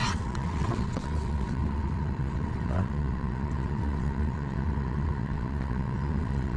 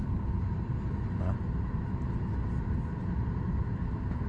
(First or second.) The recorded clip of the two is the second